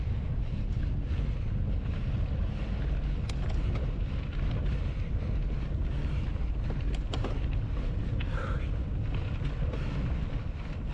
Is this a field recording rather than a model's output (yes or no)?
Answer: yes